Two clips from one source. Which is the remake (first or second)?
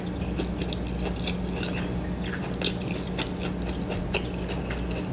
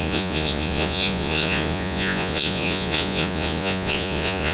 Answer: second